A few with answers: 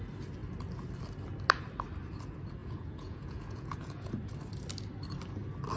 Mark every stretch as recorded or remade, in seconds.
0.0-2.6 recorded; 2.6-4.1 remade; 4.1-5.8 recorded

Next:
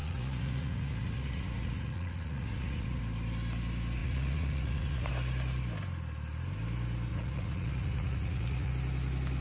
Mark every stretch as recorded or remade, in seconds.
0.0-3.0 remade; 3.0-4.0 recorded; 4.0-5.1 remade; 5.1-7.1 recorded; 7.1-8.7 remade; 8.7-9.4 recorded

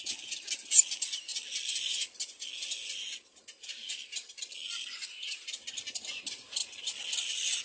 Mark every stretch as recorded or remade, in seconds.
0.0-7.6 recorded

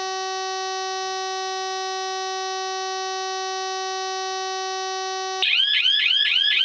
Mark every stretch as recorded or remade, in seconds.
0.0-5.7 recorded; 5.7-6.6 remade

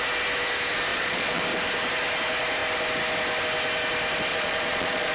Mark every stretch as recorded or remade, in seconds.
0.0-0.9 recorded; 0.9-1.4 remade; 1.4-4.3 recorded; 4.3-5.1 remade

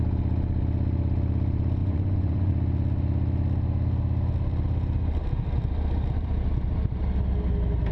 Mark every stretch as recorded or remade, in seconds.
0.0-1.8 recorded; 1.8-2.5 remade; 2.5-7.9 recorded